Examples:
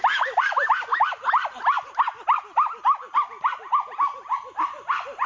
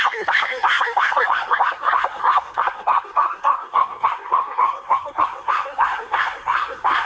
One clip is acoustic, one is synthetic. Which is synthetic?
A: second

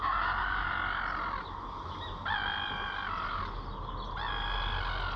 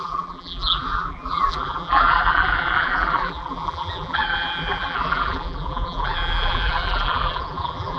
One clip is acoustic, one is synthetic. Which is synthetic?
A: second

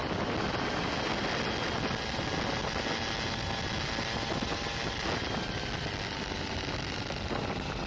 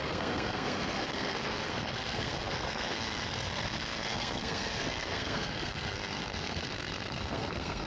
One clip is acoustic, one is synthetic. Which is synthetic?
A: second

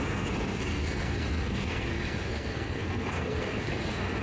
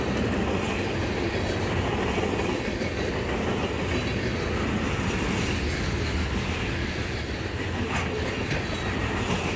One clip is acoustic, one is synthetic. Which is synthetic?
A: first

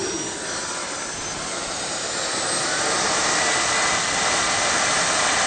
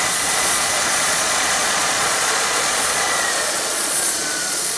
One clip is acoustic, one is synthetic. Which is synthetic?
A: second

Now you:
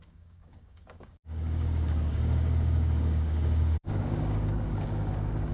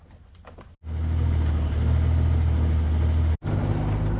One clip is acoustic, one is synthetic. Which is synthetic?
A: first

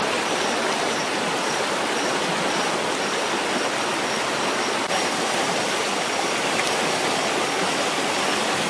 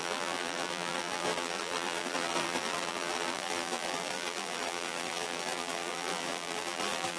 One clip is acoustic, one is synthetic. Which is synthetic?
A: second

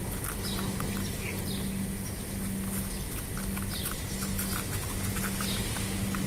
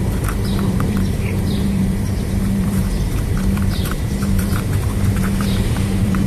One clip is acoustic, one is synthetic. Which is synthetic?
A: second